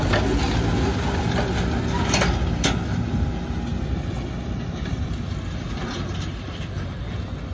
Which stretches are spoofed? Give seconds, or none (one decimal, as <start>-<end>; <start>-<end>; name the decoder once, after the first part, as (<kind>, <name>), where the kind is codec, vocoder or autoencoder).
none